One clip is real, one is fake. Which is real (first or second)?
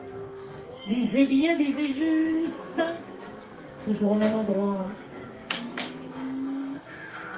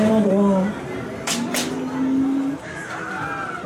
second